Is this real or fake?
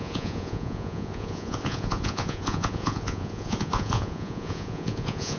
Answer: fake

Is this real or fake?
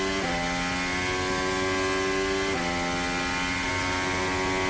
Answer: real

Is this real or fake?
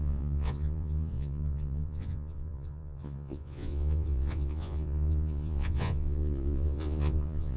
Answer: fake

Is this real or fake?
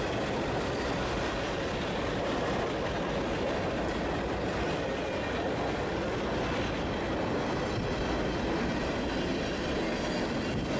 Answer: real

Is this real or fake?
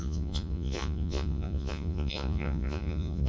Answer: fake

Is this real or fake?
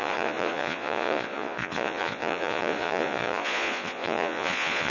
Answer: fake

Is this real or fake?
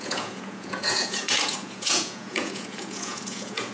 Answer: fake